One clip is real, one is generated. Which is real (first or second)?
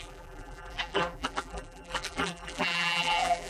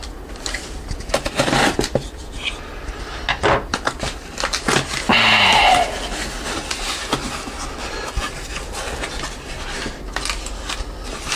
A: second